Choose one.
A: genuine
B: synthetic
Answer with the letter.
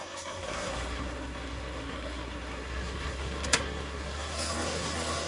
B